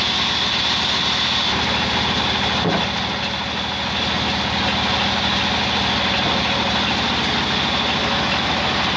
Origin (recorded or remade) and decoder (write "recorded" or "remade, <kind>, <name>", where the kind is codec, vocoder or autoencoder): recorded